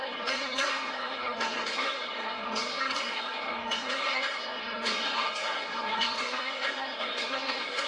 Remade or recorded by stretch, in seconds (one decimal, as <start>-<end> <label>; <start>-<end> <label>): 0.0-7.9 remade